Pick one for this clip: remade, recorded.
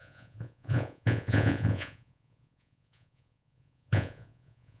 remade